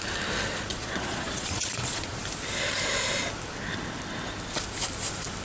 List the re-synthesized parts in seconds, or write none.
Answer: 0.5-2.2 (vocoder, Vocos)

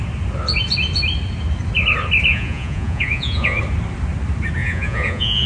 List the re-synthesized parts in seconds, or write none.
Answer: 2.3-3.6 (vocoder, Vocos); 4.6-5.5

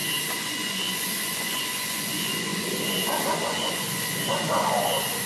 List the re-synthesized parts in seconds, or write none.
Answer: 0.0-5.3 (vocoder, Vocos)

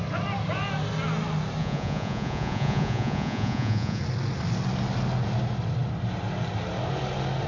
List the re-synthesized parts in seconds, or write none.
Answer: 1.6-4.0 (vocoder, Vocos)

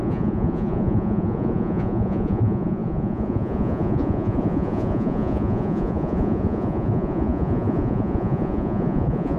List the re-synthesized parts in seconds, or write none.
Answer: 0.0-9.4 (vocoder, Vocos)